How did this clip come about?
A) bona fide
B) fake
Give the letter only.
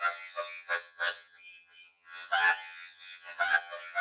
B